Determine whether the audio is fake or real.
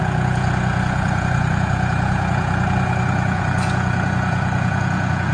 fake